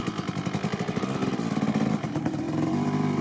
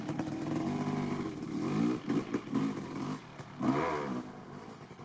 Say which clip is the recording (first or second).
second